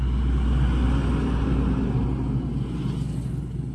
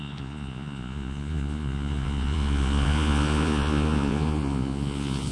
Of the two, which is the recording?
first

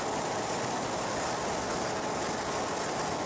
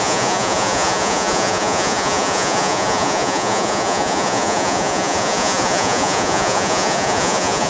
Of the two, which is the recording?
first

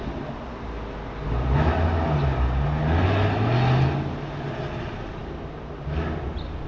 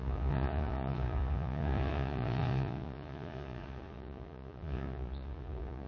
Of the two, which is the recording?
first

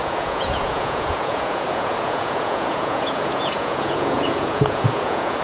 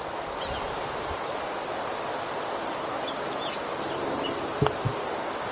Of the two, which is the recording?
second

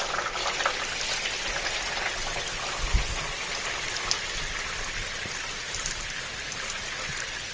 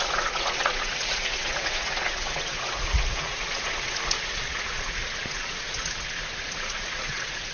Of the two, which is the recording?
first